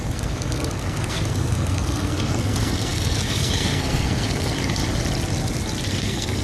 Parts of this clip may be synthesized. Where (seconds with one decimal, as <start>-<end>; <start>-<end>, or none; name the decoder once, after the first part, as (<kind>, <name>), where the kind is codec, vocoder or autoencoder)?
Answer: 0.0-4.8 (codec, SNAC); 5.9-6.4